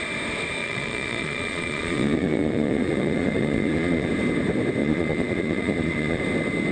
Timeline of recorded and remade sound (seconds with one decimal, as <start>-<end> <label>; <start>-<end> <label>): 0.0-0.6 recorded; 0.6-4.1 remade; 4.1-4.8 recorded; 4.8-6.2 remade; 6.2-6.7 recorded